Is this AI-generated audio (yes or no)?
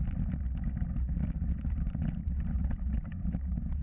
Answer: no